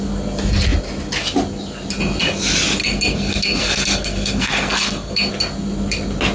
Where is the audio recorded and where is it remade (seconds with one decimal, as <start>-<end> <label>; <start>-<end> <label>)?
0.0-2.8 recorded; 2.8-5.3 remade; 5.3-6.3 recorded

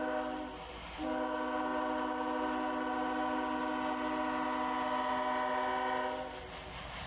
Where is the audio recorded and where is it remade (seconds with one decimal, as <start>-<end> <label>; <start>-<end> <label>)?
0.0-7.1 recorded

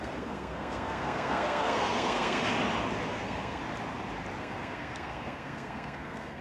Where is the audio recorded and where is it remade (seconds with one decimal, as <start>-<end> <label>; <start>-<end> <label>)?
0.0-2.4 remade; 2.4-3.1 recorded; 3.1-3.6 remade; 3.6-4.4 recorded; 4.4-6.4 remade

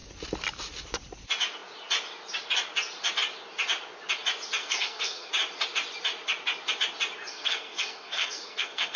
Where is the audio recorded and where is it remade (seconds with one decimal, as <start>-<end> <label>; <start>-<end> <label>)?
0.0-4.6 recorded; 4.6-5.3 remade; 5.3-7.3 recorded; 7.3-9.0 remade

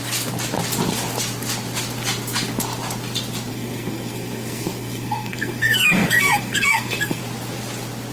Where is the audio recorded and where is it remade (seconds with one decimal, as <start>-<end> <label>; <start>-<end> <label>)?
0.0-3.5 recorded; 3.5-7.2 remade; 7.2-8.1 recorded